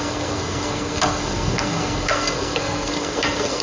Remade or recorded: remade